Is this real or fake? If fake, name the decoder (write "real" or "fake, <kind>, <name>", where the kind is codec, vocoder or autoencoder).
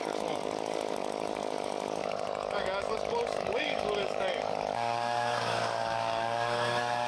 fake, codec, DAC